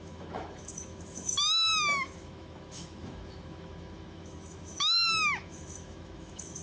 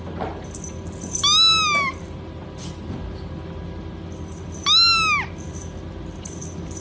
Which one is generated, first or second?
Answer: first